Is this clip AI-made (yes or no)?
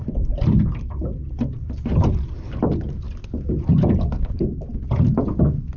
no